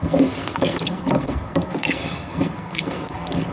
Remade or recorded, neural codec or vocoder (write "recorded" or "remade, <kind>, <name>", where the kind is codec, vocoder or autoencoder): remade, codec, SNAC